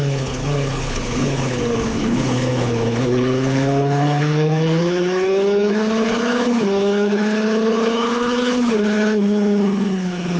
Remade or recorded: remade